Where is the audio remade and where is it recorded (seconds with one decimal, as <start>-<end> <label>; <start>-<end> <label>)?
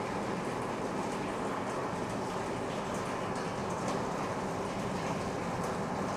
0.0-3.6 recorded; 3.6-6.2 remade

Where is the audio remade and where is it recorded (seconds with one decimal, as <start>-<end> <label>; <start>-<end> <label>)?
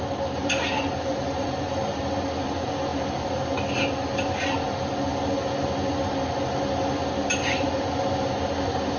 0.0-0.4 recorded; 0.4-2.0 remade; 2.0-2.9 recorded; 2.9-3.4 remade; 3.4-9.0 recorded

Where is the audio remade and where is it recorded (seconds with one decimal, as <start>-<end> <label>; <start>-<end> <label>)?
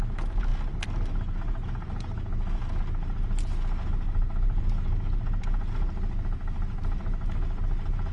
0.0-8.1 recorded